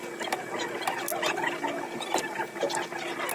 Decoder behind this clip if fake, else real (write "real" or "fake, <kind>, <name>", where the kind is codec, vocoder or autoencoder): real